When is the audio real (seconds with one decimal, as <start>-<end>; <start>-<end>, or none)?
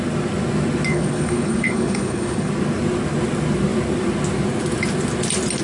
0.0-0.9; 2.5-5.6